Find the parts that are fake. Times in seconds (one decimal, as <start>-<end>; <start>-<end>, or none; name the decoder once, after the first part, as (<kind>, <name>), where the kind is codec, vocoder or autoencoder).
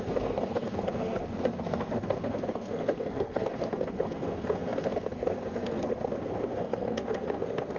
0.0-7.8 (codec, SNAC)